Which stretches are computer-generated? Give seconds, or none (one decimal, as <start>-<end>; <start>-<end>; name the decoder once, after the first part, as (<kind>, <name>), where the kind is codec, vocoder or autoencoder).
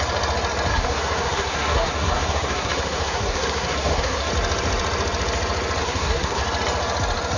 0.7-4.3 (codec, SNAC); 5.8-6.4